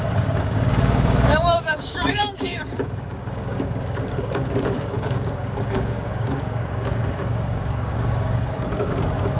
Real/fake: fake